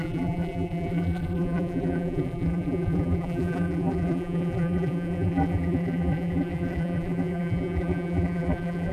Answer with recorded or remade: remade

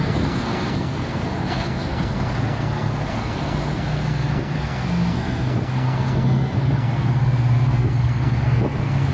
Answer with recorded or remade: remade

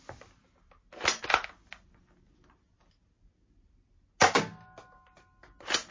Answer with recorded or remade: recorded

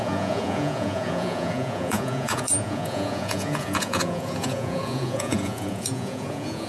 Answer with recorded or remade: remade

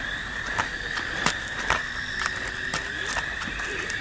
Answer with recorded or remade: recorded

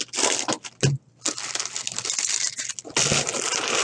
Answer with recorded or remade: recorded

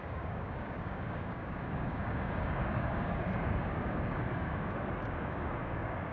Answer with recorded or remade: remade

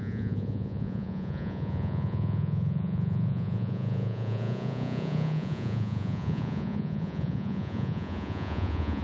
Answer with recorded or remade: remade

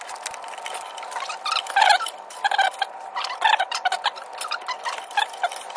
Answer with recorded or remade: recorded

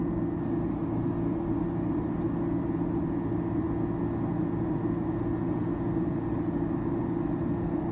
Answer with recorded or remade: recorded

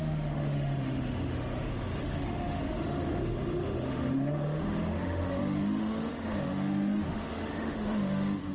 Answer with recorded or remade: remade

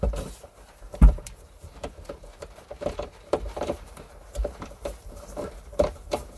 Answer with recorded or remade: remade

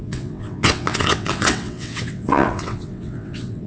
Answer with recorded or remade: remade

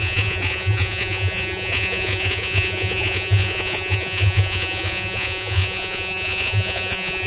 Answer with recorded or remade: remade